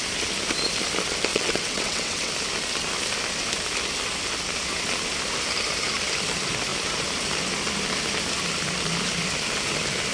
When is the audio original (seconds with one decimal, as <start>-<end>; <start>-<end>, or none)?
0.0-1.3; 2.3-10.1